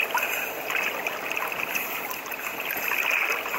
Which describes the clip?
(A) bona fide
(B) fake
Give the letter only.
A